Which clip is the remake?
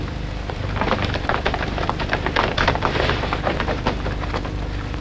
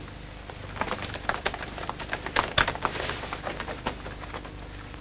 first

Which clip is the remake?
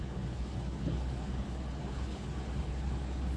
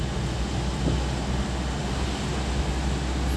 first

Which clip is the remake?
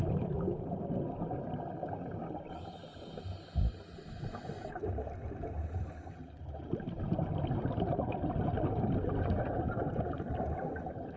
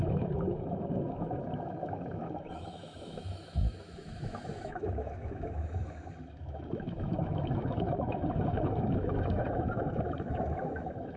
second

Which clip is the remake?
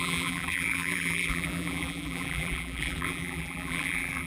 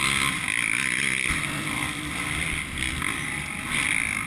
first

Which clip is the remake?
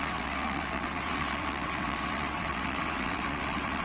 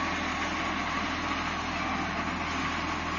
first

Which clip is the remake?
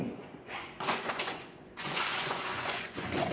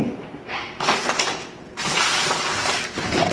first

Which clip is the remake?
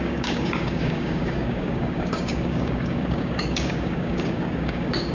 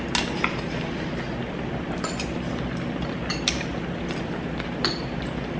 first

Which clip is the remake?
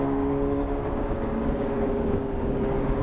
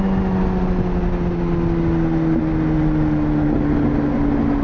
first